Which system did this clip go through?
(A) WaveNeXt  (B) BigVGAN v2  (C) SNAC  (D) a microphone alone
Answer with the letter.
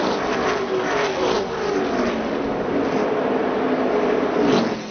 D